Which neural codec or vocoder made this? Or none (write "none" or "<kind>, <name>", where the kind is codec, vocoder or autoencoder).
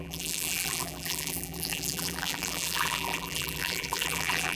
vocoder, BigVGAN v2